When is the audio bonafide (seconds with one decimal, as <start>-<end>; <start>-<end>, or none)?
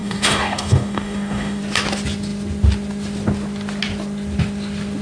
1.6-5.0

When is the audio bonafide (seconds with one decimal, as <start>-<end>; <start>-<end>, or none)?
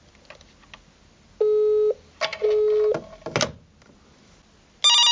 0.0-5.1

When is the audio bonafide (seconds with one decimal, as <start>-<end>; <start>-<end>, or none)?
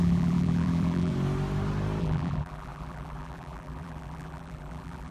1.1-2.0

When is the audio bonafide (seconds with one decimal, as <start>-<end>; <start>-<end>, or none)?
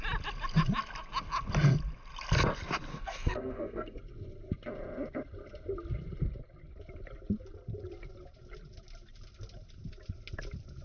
0.0-2.9; 4.0-10.8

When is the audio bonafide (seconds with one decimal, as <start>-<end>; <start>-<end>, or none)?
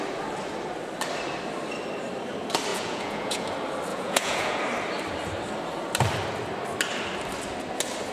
0.0-2.7; 3.5-3.9; 4.6-8.1